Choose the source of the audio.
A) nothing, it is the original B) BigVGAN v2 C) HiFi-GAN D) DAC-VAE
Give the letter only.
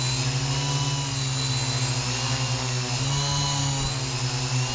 A